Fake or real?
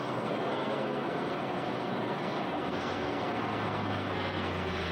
fake